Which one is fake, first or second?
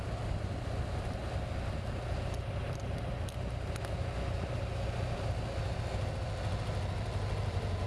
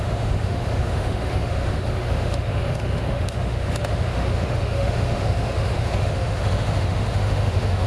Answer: second